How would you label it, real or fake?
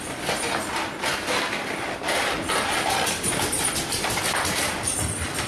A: real